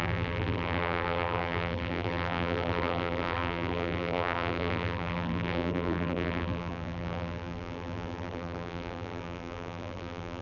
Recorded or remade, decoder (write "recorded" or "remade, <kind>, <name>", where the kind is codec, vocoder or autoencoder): remade, vocoder, BigVGAN v2